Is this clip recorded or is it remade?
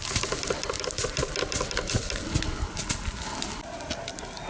recorded